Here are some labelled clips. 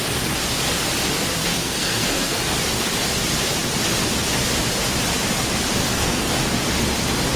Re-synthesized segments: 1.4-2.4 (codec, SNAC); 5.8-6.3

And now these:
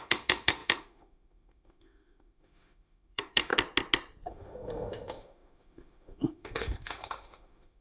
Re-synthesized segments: 0.0-3.5 (autoencoder, DAC-VAE); 4.3-7.8

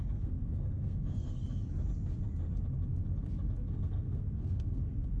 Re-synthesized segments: 0.0-1.4 (codec, SNAC); 3.7-5.2

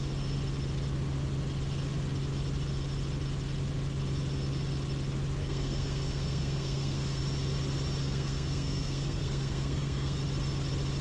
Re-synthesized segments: 5.4-7.2 (codec, SNAC); 8.0-10.2

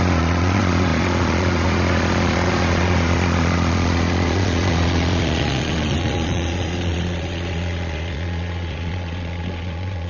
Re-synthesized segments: 0.0-10.1 (vocoder, Vocos)

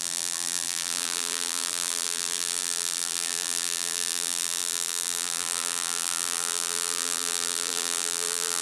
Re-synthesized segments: 0.0-8.6 (vocoder, BigVGAN v2)

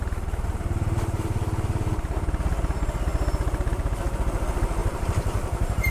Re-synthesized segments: 0.0-2.3 (vocoder, BigVGAN v2); 4.8-5.9